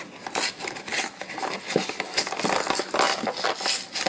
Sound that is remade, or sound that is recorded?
recorded